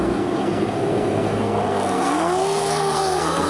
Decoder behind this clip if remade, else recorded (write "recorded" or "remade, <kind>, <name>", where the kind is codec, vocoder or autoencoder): remade, codec, SNAC